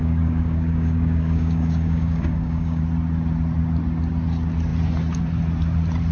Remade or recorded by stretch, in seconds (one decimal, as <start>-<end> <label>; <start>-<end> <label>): 0.0-2.8 remade; 2.8-6.1 recorded